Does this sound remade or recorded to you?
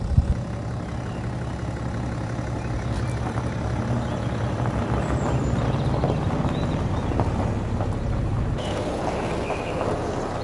recorded